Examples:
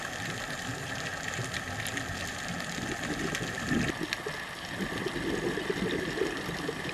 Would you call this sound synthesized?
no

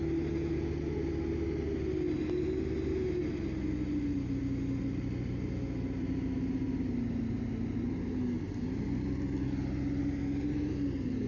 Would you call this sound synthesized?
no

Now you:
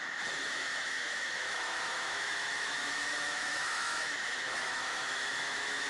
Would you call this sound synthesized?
yes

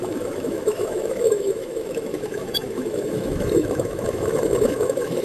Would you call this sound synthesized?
yes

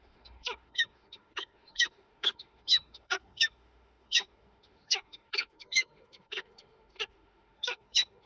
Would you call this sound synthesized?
yes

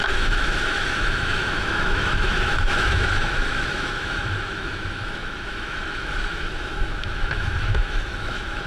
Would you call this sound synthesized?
yes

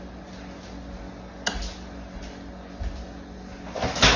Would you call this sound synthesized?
no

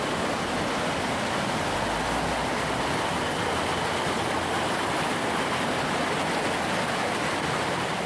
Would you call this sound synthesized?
no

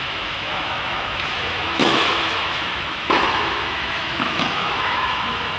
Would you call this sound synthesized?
yes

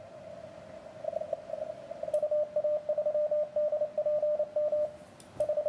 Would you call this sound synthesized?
no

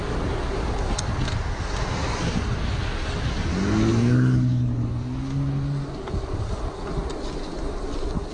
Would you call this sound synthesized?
no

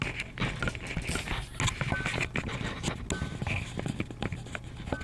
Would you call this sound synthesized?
no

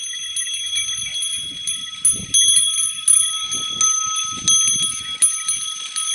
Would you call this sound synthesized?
no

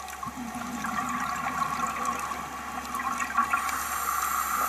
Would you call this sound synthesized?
no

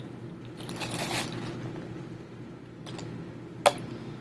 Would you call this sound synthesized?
no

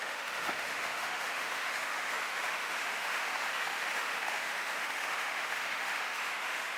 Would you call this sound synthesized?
yes